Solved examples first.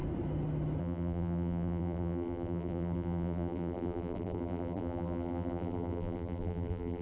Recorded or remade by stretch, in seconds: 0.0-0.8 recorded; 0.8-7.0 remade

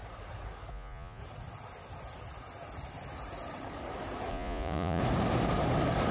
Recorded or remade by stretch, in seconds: 0.0-0.7 recorded; 0.7-1.2 remade; 1.2-4.3 recorded; 4.3-5.0 remade; 5.0-6.1 recorded

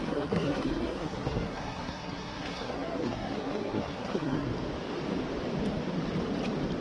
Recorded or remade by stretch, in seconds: 0.0-4.5 remade; 4.5-6.8 recorded

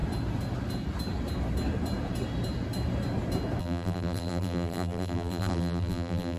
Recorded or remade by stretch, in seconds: 0.0-3.6 recorded; 3.6-6.4 remade

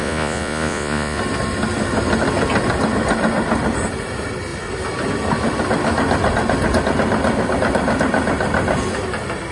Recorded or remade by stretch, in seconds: 0.0-1.2 remade; 1.2-9.5 recorded